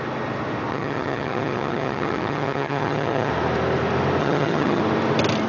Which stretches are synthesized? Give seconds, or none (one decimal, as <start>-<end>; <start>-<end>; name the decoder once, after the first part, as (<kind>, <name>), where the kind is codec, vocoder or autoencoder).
0.7-3.3 (vocoder, HiFi-GAN); 4.2-4.8